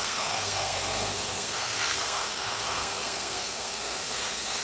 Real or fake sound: fake